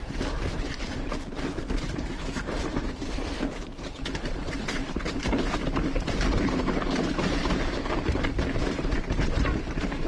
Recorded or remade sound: remade